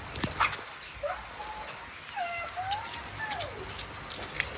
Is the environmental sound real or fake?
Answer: real